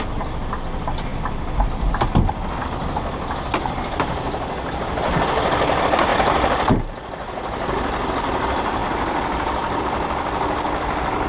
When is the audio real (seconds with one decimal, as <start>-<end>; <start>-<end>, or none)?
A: 0.0-11.3